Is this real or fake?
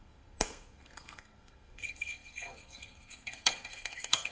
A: fake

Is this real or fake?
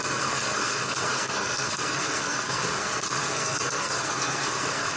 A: fake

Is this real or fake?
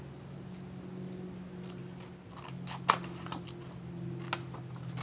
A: real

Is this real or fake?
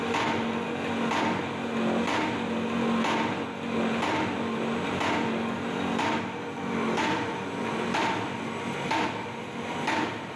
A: real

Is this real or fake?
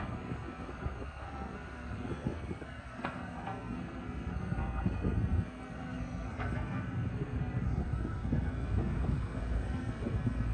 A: fake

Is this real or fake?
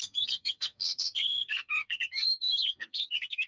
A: fake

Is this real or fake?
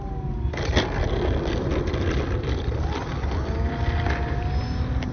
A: real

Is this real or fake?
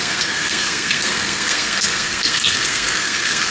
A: fake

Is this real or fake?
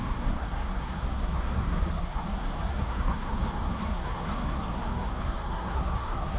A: fake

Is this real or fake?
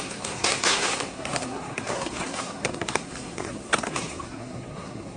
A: fake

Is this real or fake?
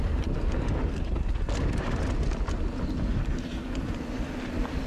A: real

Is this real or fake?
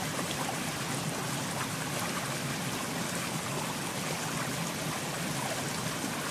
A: real